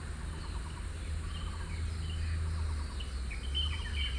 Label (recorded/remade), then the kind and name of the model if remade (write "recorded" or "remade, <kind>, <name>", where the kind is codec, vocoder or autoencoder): recorded